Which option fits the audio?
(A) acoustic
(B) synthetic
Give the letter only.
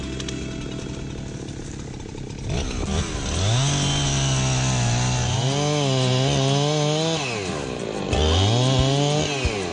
A